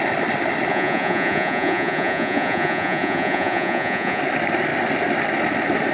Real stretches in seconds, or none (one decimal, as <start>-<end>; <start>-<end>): 0.0-0.7; 4.2-5.9